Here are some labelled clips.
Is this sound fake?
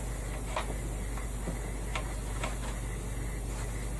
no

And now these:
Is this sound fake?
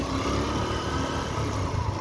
no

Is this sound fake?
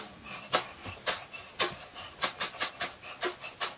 no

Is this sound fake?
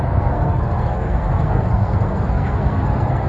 yes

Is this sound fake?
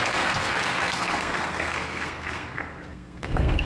yes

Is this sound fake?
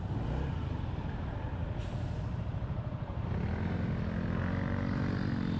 no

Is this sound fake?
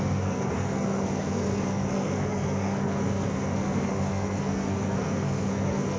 yes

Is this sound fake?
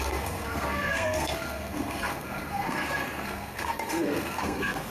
yes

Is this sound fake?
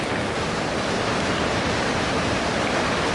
no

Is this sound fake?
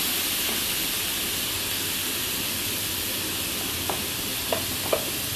no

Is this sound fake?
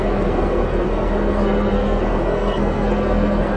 yes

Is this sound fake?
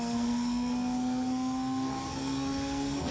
yes